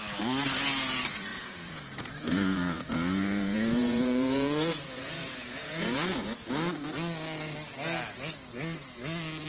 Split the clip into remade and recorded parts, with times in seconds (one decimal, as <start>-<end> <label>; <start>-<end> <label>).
0.0-1.3 recorded; 1.3-6.5 remade; 6.5-9.5 recorded